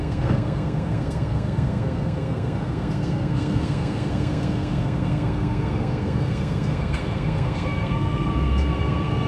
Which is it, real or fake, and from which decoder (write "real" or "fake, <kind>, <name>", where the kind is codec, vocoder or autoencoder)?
fake, codec, SNAC